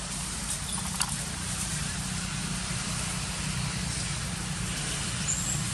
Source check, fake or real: fake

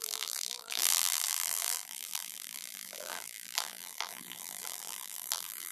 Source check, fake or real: fake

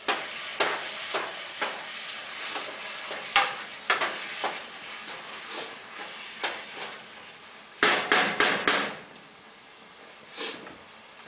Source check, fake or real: real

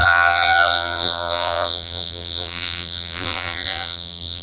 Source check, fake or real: fake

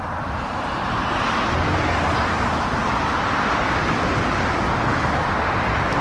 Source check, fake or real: fake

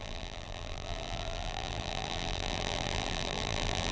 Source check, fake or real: fake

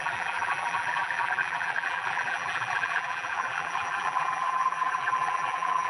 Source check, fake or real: fake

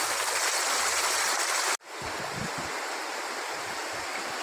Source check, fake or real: real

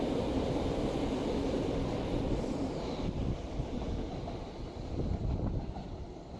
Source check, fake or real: fake